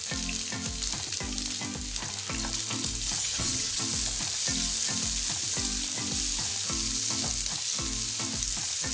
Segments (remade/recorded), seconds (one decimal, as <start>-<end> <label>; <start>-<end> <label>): 0.0-3.2 recorded; 3.2-3.8 remade; 3.8-8.9 recorded